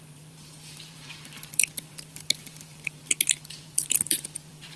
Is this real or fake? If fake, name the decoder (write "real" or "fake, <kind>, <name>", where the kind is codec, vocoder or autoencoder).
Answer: fake, vocoder, BigVGAN v2